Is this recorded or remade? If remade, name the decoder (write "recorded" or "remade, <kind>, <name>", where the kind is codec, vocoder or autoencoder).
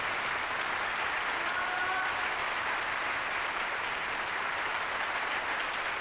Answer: recorded